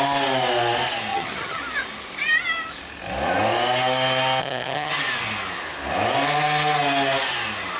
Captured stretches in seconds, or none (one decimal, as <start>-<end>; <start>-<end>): 0.0-1.1; 1.6-4.4; 4.9-7.8